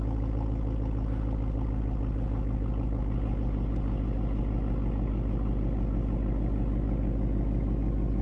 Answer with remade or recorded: recorded